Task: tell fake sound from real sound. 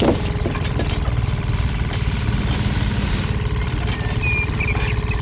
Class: real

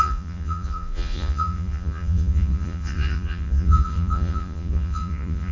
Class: fake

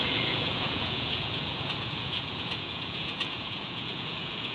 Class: fake